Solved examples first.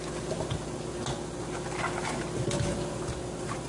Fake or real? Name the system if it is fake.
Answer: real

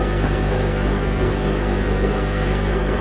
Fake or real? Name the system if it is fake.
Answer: fake, codec, SNAC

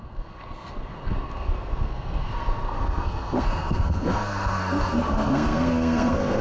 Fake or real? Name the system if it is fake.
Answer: fake, codec, SNAC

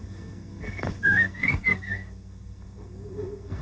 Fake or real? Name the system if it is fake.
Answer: fake, codec, SNAC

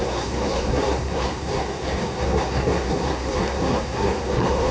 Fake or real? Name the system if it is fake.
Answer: fake, codec, SNAC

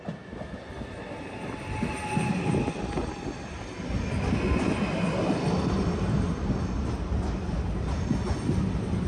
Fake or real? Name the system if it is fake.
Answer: real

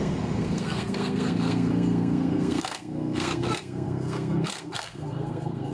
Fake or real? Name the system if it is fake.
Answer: fake, codec, SNAC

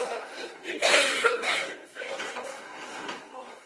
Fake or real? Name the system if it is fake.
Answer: fake, codec, SNAC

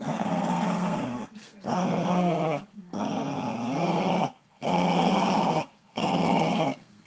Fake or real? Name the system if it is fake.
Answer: fake, codec, SNAC